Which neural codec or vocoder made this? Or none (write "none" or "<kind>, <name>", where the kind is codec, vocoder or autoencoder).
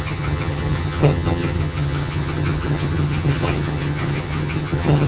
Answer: vocoder, HiFi-GAN